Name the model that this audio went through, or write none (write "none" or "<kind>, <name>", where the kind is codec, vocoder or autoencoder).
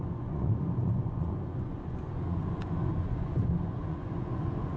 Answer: vocoder, Vocos